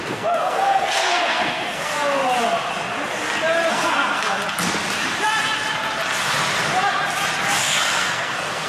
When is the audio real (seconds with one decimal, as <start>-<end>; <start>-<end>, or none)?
2.2-3.7; 4.4-7.6